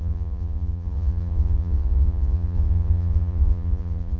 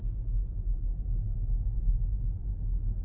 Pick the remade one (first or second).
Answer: first